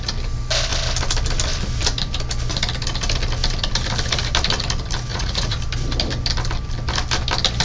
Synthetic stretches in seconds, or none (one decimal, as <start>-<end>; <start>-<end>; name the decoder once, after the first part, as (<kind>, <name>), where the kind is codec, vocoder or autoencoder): 5.1-5.6 (vocoder, Vocos)